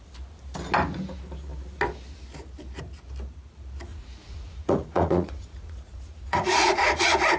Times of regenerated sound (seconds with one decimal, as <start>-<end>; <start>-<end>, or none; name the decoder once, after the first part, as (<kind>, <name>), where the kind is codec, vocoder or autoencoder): 3.9-7.4 (vocoder, Vocos)